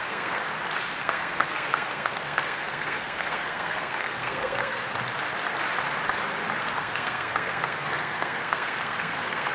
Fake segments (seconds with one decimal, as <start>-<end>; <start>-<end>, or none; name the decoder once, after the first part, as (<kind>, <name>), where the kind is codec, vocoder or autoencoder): 0.0-0.4 (codec, SNAC); 1.0-4.8; 6.6-9.5